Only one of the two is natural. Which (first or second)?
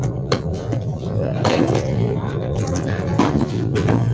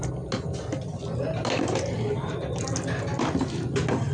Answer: second